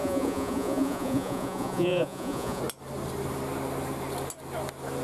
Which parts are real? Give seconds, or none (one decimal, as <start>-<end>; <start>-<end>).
2.6-5.0